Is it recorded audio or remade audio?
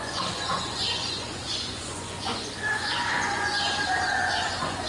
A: remade